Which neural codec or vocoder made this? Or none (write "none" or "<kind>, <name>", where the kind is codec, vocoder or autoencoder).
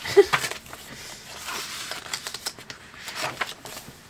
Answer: none